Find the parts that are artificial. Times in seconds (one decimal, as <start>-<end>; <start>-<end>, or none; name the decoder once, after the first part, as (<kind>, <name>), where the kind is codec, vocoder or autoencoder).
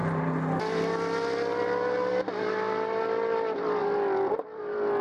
3.8-4.6 (vocoder, BigVGAN v2)